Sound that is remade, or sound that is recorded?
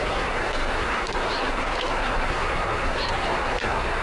remade